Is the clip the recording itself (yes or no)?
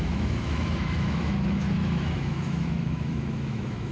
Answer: no